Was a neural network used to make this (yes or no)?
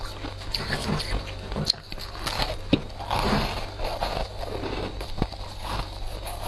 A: no